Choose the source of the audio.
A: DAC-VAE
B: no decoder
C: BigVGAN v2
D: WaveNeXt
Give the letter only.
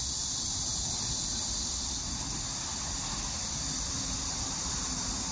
B